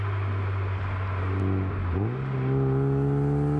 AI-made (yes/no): no